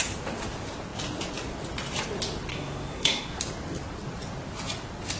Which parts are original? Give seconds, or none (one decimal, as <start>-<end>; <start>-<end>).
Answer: 0.0-2.5; 3.4-5.2